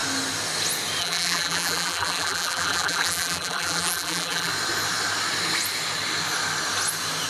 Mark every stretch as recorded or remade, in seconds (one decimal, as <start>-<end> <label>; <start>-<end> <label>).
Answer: 0.0-1.0 recorded; 1.0-4.5 remade; 4.5-7.3 recorded